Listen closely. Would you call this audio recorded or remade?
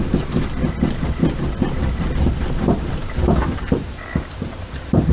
recorded